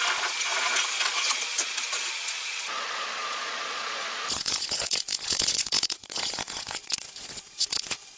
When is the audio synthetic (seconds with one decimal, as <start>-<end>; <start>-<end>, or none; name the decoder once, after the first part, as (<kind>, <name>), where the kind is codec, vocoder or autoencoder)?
0.0-8.2 (vocoder, Vocos)